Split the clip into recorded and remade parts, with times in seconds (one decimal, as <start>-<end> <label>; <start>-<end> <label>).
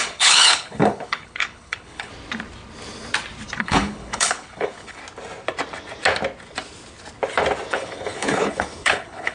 0.0-2.1 remade; 2.1-3.6 recorded; 3.6-5.0 remade; 5.0-7.7 recorded; 7.7-9.3 remade